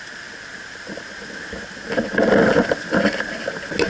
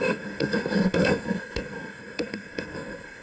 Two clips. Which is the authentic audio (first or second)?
first